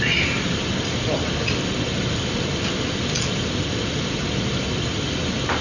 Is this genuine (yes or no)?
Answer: yes